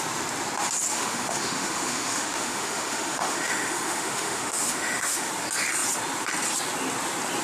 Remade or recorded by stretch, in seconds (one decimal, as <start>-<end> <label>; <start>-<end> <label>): 0.0-0.9 recorded; 0.9-5.3 remade; 5.3-7.4 recorded